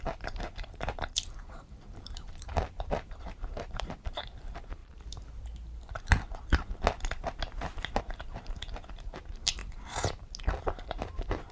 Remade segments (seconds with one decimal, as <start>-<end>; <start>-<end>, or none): 0.0-4.8; 8.0-9.6; 10.6-11.5